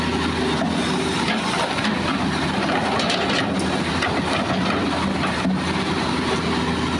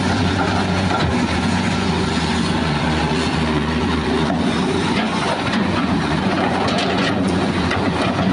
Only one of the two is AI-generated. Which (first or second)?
second